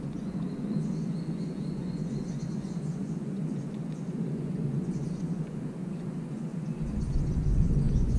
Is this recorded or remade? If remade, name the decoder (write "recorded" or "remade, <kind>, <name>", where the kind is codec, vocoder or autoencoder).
remade, vocoder, Vocos